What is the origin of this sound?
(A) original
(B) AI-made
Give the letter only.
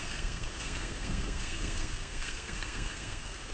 B